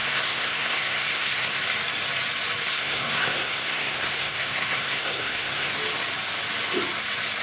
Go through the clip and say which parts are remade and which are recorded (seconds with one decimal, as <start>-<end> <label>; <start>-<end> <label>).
0.0-1.6 remade; 1.6-2.6 recorded; 2.6-5.7 remade; 5.7-7.4 recorded